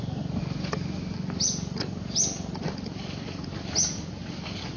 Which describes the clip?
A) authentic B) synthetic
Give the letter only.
A